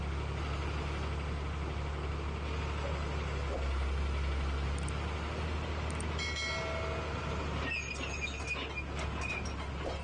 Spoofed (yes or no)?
no